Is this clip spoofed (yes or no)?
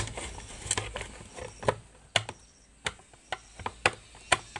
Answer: no